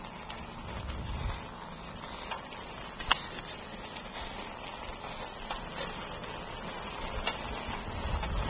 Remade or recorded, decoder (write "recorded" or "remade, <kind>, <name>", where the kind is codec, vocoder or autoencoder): recorded